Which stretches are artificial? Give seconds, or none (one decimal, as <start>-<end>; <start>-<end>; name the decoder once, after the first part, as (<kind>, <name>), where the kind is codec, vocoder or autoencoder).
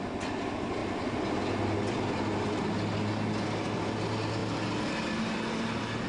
0.8-1.3 (vocoder, BigVGAN v2)